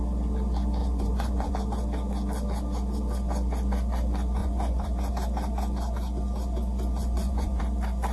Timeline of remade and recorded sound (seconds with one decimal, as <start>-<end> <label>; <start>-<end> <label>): 0.0-0.8 recorded; 0.8-1.5 remade; 1.5-4.4 recorded; 4.4-5.1 remade; 5.1-7.0 recorded; 7.0-7.6 remade; 7.6-8.1 recorded